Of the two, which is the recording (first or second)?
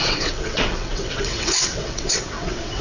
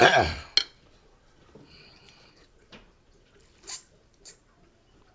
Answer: second